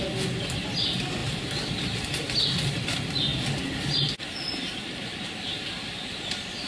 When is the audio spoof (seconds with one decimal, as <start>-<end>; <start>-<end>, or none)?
1.2-1.8